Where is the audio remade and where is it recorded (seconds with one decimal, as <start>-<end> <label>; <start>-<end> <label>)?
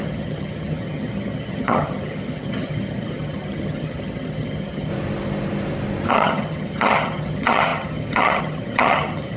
0.0-4.9 remade; 4.9-6.1 recorded; 6.1-9.4 remade